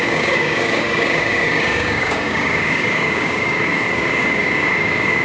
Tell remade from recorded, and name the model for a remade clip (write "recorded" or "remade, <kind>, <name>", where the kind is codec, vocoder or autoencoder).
remade, codec, DAC